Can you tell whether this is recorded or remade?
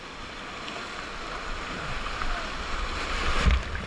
recorded